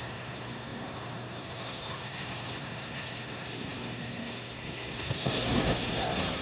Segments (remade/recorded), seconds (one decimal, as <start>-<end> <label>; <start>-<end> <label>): 0.0-6.4 remade